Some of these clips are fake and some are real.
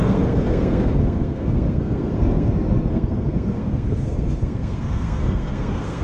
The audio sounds fake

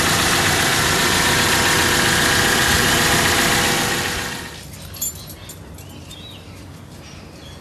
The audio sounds real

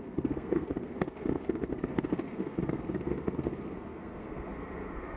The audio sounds fake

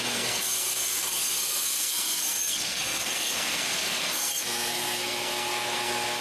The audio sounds fake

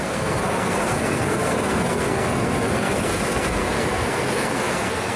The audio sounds fake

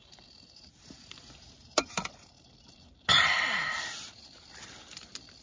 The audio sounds real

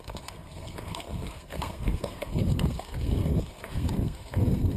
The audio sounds fake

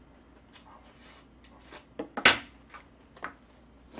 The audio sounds real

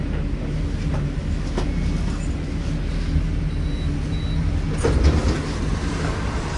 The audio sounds real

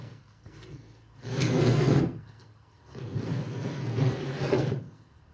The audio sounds fake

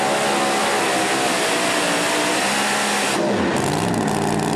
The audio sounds real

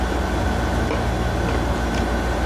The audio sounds real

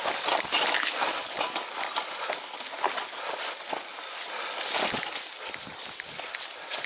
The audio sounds real